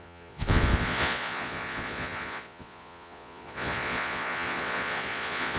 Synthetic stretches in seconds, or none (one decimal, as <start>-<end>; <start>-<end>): 0.0-5.6